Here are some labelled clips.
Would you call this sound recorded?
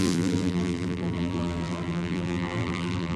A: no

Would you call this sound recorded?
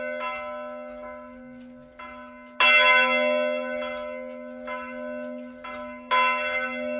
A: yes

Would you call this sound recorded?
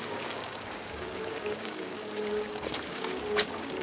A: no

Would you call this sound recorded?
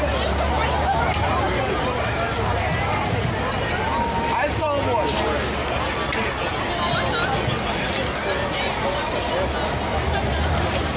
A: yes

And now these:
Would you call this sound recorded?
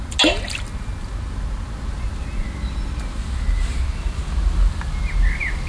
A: yes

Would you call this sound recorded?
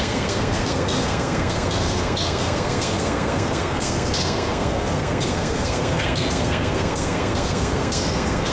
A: no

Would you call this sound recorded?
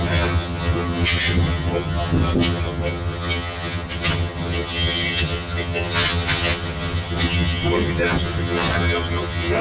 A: no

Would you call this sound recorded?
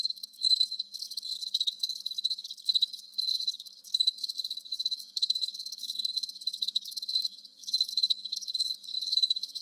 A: no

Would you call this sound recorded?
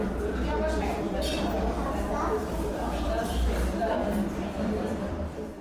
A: no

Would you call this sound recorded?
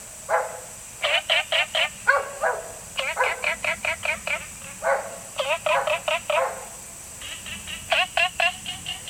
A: yes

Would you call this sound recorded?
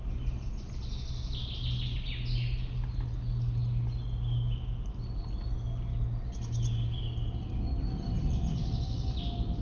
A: yes